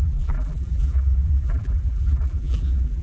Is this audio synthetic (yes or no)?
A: yes